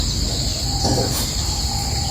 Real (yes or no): yes